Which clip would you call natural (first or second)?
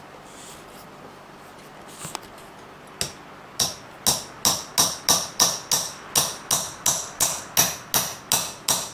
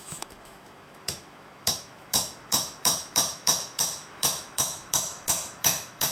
first